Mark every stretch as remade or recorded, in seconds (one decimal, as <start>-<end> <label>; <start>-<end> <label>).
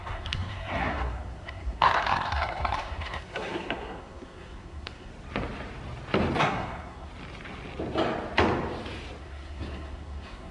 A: 0.0-5.1 remade; 5.1-6.4 recorded; 6.4-7.1 remade; 7.1-9.2 recorded; 9.2-10.5 remade